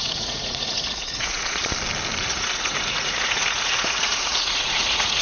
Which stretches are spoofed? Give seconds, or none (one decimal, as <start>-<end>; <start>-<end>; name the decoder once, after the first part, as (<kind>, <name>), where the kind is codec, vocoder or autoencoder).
0.0-1.6 (vocoder, Vocos); 2.2-5.2